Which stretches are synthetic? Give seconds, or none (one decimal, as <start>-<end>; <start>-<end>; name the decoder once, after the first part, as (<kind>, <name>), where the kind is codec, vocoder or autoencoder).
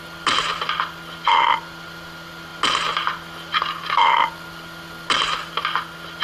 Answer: none